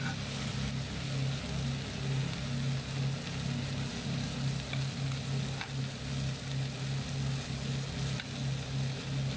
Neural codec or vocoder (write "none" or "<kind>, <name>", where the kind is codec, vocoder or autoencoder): none